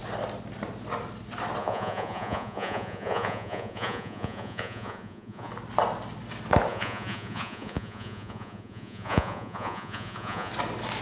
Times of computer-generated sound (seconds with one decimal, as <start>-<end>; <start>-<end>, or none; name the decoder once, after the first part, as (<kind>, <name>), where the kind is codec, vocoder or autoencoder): 1.6-5.5 (vocoder, Vocos); 6.7-10.5